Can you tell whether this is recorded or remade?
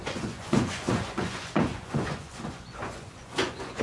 remade